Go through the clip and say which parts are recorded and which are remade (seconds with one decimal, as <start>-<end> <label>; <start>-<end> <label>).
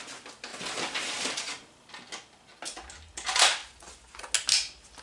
0.0-3.6 recorded; 3.6-4.2 remade; 4.2-5.0 recorded